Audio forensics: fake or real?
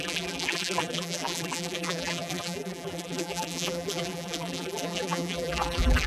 fake